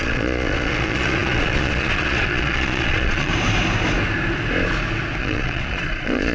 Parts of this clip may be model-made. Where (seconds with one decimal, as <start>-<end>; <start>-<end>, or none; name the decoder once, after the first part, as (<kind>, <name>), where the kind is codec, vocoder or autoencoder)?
0.0-3.3 (vocoder, Vocos); 5.2-6.3